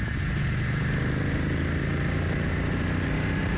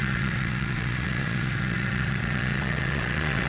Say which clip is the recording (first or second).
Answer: first